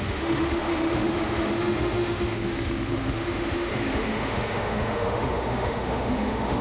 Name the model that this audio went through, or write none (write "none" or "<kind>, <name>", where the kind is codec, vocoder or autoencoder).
autoencoder, DAC-VAE